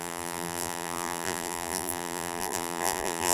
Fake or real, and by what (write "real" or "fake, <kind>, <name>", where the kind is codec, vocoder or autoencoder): fake, vocoder, BigVGAN v2